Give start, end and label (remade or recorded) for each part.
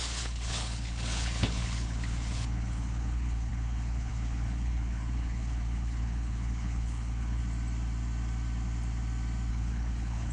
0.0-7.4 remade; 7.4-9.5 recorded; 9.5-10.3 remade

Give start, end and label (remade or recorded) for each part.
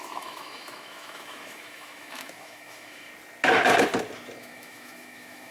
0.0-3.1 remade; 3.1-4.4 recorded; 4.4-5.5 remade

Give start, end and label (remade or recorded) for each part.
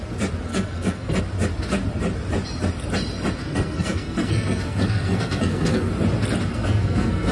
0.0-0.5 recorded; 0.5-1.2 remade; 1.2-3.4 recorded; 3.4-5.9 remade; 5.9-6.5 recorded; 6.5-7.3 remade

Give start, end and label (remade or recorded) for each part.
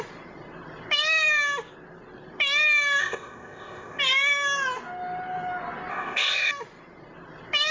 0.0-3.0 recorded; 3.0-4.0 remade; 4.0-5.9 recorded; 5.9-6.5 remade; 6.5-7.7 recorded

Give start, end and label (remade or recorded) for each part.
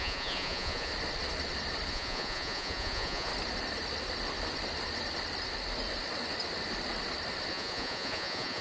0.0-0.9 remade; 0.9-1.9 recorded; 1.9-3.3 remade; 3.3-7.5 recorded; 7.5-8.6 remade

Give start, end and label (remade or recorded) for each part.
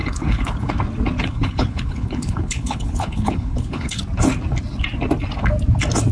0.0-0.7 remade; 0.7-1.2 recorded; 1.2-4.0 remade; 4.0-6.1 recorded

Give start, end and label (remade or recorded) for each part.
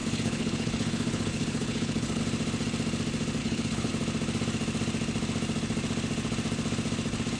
0.0-2.2 remade; 2.2-3.4 recorded; 3.4-3.9 remade; 3.9-7.4 recorded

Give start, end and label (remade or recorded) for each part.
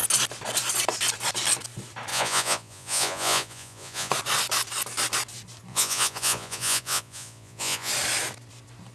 0.0-2.1 recorded; 2.1-4.1 remade; 4.1-5.7 recorded; 5.7-7.9 remade; 7.9-8.9 recorded